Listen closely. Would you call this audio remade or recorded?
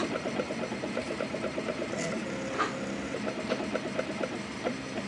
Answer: recorded